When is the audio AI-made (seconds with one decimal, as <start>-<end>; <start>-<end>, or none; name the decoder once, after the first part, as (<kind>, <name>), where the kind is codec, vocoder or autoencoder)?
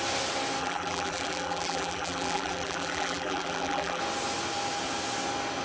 0.6-4.0 (vocoder, BigVGAN v2)